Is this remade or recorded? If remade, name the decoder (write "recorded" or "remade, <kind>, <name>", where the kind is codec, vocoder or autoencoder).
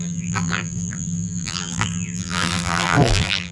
remade, vocoder, BigVGAN v2